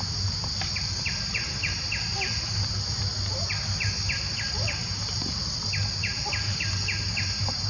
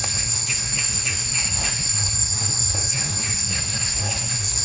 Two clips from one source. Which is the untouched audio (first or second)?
first